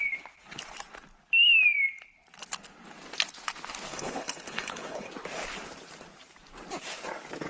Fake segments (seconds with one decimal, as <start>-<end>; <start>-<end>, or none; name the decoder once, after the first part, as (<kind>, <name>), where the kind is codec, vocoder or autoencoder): 3.9-5.1 (codec, HILCodec)